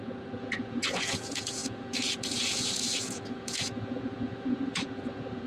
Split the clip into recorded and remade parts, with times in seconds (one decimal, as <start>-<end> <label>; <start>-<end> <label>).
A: 0.0-5.5 remade